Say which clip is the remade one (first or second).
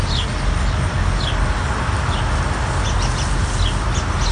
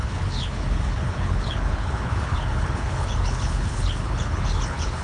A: second